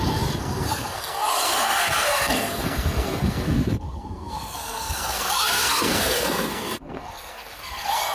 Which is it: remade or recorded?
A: remade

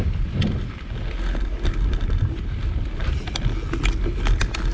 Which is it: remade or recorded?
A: recorded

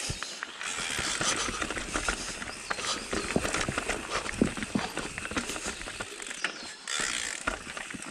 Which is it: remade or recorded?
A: recorded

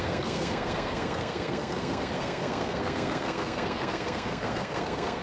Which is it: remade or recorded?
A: remade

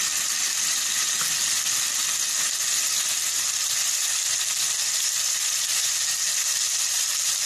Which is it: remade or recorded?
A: recorded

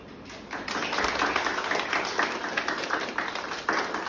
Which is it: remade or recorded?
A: recorded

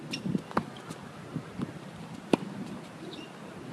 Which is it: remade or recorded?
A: recorded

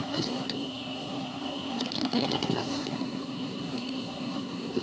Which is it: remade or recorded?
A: remade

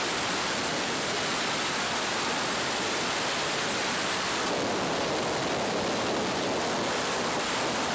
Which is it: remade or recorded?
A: recorded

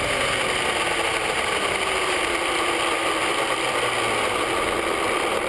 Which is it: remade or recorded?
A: recorded